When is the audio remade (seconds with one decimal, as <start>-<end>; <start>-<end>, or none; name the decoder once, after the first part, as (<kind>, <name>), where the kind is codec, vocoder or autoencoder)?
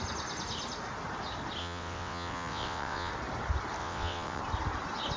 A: 1.6-3.1 (vocoder, WaveNeXt); 3.8-4.4